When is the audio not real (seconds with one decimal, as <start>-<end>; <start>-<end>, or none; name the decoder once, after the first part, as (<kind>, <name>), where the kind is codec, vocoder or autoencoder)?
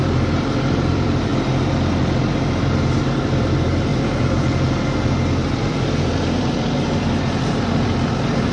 0.0-1.3 (vocoder, BigVGAN v2); 2.0-8.5